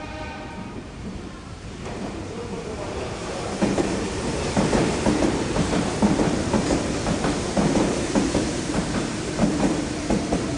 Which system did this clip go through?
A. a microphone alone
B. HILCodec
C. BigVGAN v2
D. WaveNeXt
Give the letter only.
C